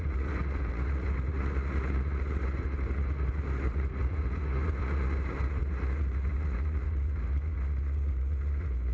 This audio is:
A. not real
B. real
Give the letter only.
A